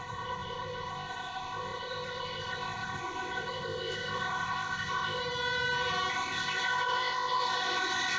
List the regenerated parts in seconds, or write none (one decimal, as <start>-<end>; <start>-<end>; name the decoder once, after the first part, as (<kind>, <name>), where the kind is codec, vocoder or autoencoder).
0.0-5.2 (codec, ZipCodec); 6.1-8.2